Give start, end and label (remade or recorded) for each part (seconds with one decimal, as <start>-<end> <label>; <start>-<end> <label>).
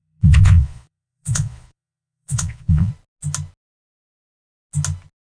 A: 0.0-2.9 remade; 2.9-5.3 recorded